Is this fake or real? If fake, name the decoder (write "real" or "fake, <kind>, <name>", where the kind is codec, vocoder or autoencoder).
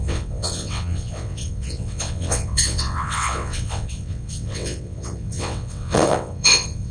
fake, vocoder, WaveNeXt